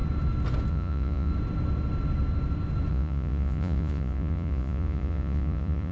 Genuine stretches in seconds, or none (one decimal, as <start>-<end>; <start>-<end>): 0.0-0.7; 1.3-2.9